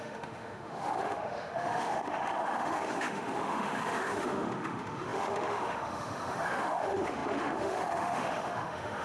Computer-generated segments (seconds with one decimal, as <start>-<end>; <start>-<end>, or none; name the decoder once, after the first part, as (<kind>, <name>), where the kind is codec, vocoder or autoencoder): 0.0-9.0 (autoencoder, DAC-VAE)

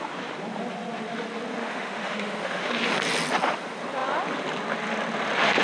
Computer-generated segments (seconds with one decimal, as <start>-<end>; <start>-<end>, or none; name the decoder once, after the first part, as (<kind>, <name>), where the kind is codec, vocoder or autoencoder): 1.6-2.7 (autoencoder, DAC-VAE)

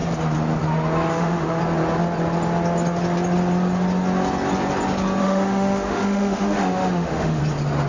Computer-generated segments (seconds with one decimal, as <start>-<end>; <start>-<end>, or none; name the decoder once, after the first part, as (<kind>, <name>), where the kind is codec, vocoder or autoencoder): 1.1-1.6 (autoencoder, DAC-VAE); 5.2-7.4

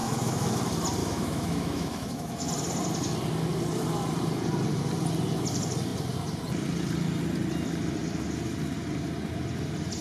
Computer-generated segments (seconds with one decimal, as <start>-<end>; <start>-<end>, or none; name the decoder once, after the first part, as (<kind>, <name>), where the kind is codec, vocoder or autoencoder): 0.0-0.6 (autoencoder, DAC-VAE); 1.0-2.5

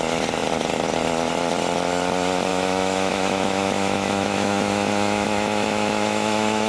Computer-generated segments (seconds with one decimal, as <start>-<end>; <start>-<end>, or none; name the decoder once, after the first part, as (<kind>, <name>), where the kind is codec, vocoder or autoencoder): 2.5-6.7 (autoencoder, DAC-VAE)

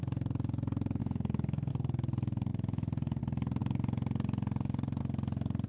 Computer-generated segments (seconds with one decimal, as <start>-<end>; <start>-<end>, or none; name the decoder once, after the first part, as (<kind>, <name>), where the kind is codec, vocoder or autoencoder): 1.0-1.7 (autoencoder, DAC-VAE); 2.5-3.2

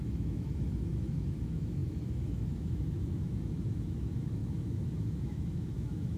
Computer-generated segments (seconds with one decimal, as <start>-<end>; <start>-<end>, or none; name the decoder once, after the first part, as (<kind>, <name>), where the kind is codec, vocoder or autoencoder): 0.0-6.2 (autoencoder, DAC-VAE)

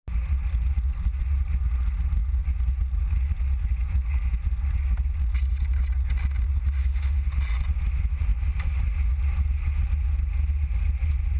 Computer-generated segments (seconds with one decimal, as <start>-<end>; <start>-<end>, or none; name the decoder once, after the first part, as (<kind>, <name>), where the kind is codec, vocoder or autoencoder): 6.8-7.3 (autoencoder, DAC-VAE)